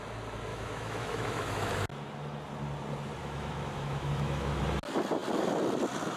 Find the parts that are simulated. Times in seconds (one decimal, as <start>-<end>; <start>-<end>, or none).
0.5-1.7; 3.2-4.6